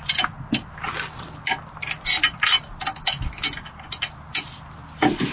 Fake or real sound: real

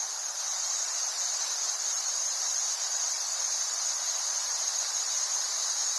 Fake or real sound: real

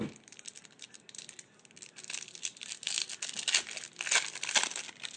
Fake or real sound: real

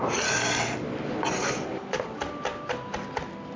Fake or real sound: real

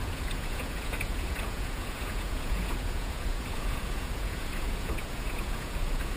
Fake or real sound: fake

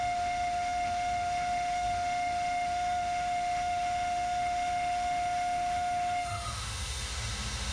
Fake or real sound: fake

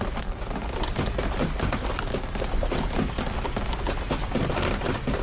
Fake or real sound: real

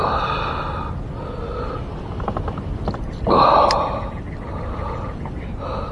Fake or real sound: real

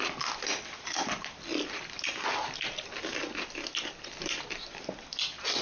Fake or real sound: real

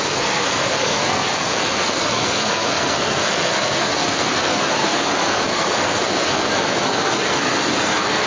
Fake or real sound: fake